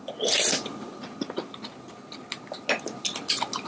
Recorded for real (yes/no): yes